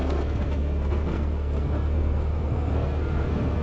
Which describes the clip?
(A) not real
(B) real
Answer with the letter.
A